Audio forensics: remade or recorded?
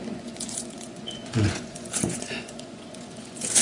remade